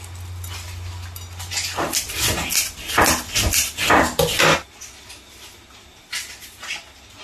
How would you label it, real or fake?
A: real